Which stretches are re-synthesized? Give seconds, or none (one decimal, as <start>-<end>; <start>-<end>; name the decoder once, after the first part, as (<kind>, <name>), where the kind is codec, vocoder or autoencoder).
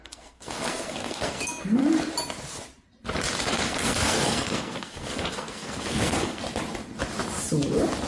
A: 0.0-1.8 (codec, SNAC); 3.4-6.4